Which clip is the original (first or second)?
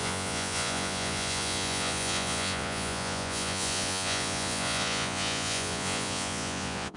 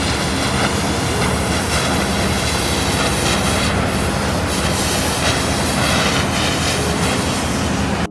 second